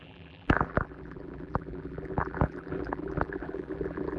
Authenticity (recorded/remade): remade